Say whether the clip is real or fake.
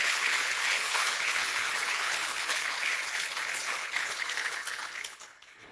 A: fake